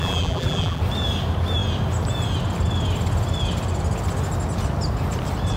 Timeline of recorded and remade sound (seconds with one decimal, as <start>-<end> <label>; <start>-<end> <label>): 0.0-0.8 remade; 0.8-5.6 recorded